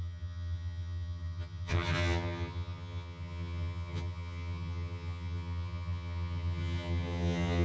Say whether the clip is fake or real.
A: fake